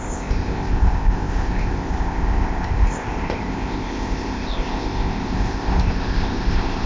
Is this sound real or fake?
fake